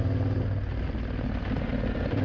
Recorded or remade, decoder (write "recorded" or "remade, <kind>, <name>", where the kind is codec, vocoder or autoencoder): recorded